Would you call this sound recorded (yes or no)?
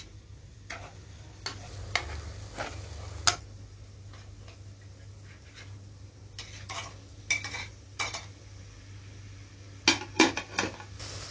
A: yes